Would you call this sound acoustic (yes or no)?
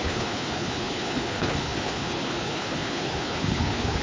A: no